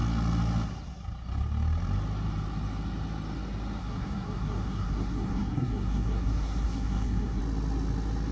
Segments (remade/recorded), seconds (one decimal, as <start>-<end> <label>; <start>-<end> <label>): 0.0-3.8 recorded; 3.8-7.4 remade; 7.4-8.3 recorded